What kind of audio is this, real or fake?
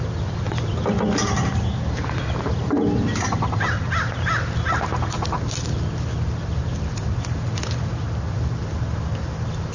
real